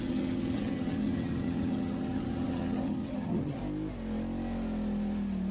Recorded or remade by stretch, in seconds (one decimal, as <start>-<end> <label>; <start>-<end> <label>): 0.0-3.6 remade; 3.6-5.5 recorded